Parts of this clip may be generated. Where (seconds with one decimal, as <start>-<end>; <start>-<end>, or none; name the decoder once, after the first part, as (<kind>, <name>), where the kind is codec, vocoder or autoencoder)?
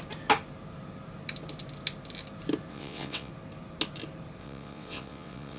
2.7-3.3 (vocoder, WaveNeXt); 4.4-5.6